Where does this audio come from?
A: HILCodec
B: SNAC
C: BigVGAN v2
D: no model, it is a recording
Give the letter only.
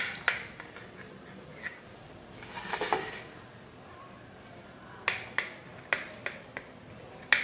D